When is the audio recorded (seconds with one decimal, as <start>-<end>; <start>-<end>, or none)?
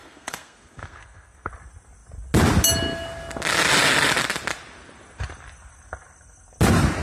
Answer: 1.5-7.0